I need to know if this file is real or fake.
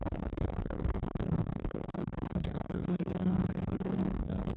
fake